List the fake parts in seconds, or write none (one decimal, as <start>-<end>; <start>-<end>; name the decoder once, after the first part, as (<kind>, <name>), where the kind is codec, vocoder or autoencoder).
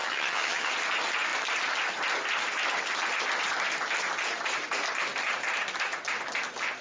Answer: 0.0-0.7 (vocoder, HiFi-GAN)